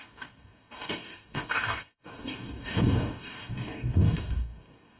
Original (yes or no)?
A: no